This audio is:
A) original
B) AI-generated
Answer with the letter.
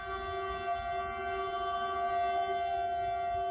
A